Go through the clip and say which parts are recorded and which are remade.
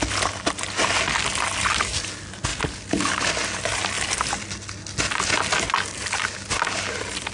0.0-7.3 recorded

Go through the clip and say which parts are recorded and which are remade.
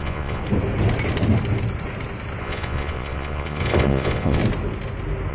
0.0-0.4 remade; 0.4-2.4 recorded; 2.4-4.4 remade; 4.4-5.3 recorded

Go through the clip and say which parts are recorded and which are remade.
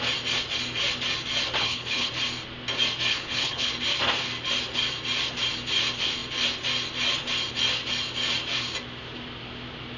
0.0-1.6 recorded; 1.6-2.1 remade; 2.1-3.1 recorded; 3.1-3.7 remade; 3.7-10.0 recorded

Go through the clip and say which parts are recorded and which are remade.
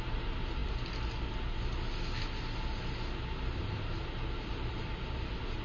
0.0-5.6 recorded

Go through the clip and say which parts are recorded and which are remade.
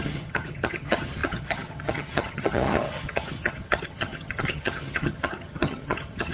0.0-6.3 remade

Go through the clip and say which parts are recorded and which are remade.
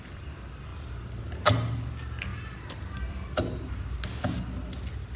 0.0-2.3 recorded; 2.3-3.7 remade; 3.7-5.2 recorded